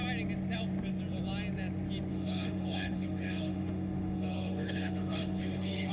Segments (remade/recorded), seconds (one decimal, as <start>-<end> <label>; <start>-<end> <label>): 0.0-2.1 recorded; 2.1-5.9 remade